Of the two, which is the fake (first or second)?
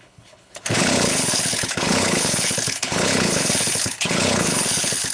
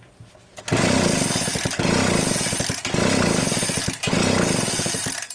first